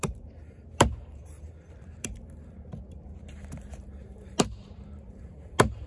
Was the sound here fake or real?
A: fake